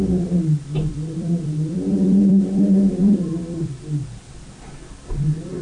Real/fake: fake